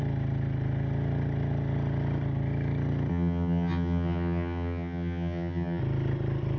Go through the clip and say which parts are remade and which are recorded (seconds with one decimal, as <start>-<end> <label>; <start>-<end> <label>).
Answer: 0.0-3.1 recorded; 3.1-5.8 remade; 5.8-6.6 recorded